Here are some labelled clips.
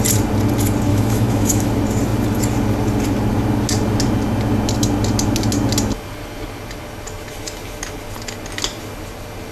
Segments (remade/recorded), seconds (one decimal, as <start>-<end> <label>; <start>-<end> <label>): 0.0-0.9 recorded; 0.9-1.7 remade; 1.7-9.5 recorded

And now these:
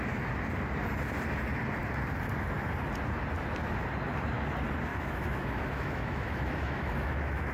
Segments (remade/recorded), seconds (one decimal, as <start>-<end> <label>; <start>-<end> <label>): 0.0-4.9 recorded; 4.9-7.5 remade

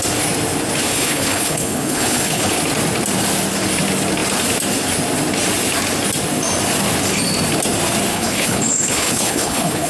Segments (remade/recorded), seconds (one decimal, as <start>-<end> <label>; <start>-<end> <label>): 0.0-0.9 recorded; 0.9-2.5 remade; 2.5-8.1 recorded; 8.1-9.9 remade